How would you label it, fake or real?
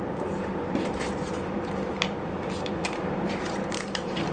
fake